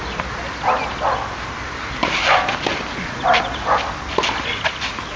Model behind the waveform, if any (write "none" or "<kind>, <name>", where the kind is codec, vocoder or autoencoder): none